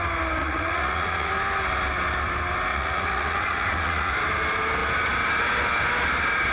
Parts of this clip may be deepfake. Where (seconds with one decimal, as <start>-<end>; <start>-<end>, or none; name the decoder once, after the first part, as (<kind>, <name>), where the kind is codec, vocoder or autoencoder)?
0.4-1.3 (vocoder, Vocos); 2.7-4.1